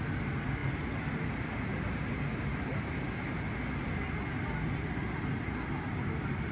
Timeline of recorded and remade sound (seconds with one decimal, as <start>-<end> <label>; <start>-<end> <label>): 0.0-6.5 recorded